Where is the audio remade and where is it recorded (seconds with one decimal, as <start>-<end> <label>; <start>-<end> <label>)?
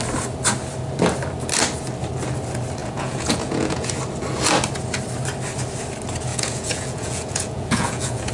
0.0-2.8 recorded; 2.8-3.9 remade; 3.9-6.3 recorded; 6.3-8.3 remade